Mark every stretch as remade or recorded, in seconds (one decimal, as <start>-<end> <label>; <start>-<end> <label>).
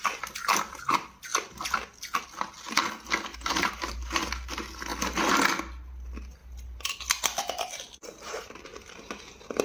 0.0-3.3 recorded; 3.3-4.2 remade; 4.2-9.6 recorded